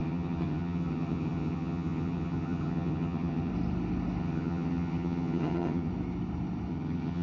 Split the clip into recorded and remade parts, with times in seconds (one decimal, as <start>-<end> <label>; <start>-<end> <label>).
0.0-3.5 remade; 3.5-4.2 recorded; 4.2-5.9 remade; 5.9-6.7 recorded; 6.7-7.2 remade